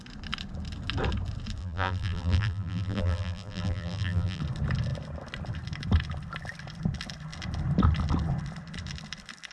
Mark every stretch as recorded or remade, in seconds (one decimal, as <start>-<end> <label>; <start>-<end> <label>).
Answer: 0.0-1.6 recorded; 1.6-4.4 remade; 4.4-9.5 recorded

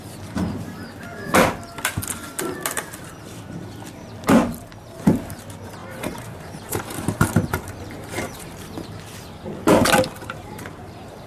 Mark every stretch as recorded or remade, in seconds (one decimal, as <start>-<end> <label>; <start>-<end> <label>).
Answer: 0.0-5.8 recorded; 5.8-8.6 remade; 8.6-10.4 recorded; 10.4-11.3 remade

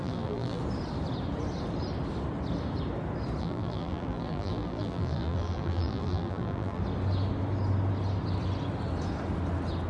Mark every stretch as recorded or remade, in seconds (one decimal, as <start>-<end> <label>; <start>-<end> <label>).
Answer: 0.0-0.6 remade; 0.6-3.4 recorded; 3.4-6.8 remade; 6.8-9.9 recorded

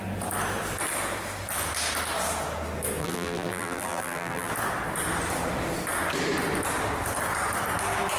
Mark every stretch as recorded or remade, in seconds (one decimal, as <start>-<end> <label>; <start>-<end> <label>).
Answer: 0.0-3.0 recorded; 3.0-4.5 remade; 4.5-8.2 recorded

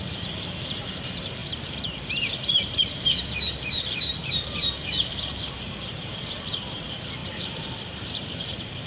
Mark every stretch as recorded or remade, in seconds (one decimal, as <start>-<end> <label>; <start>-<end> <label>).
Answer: 0.0-8.9 remade